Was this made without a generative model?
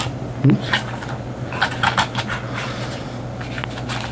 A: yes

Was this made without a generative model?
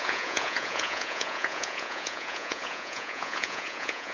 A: no